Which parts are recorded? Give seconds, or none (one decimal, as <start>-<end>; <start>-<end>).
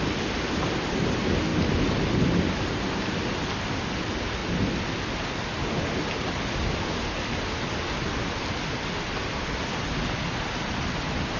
0.0-11.4